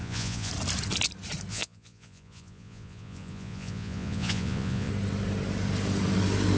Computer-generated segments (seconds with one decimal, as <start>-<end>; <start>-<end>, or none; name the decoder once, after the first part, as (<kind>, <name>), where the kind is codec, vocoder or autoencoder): 0.0-0.5 (vocoder, Vocos); 1.5-4.9